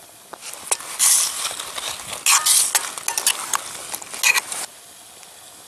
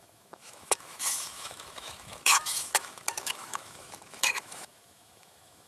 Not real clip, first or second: second